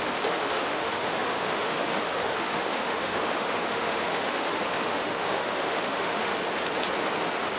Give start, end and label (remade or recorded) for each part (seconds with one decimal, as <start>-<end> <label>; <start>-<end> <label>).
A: 0.0-6.3 remade; 6.3-7.6 recorded